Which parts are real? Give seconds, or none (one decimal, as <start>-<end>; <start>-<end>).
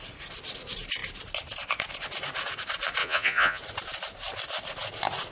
0.0-3.0; 3.6-5.3